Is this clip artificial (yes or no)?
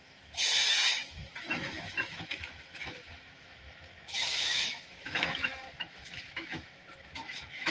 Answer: yes